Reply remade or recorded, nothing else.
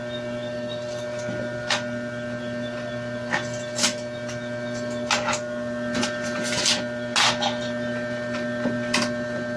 recorded